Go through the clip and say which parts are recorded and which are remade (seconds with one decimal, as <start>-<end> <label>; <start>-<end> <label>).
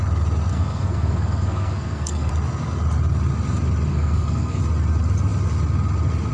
0.0-0.5 recorded; 0.5-2.3 remade; 2.3-3.9 recorded; 3.9-4.6 remade; 4.6-6.3 recorded